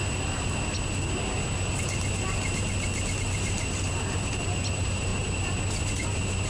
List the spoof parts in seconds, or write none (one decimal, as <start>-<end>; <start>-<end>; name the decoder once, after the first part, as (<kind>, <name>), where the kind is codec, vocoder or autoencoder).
none